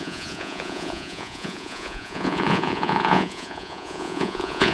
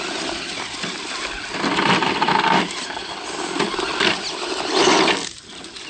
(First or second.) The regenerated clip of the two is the first